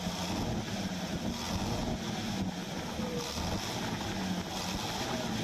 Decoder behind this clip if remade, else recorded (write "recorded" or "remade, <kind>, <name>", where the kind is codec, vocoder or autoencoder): recorded